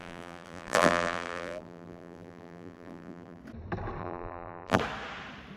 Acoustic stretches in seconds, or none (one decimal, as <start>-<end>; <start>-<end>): 3.4-4.0; 4.8-5.6